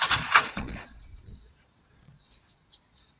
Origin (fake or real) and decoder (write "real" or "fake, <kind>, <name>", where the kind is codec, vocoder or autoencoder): fake, vocoder, Vocos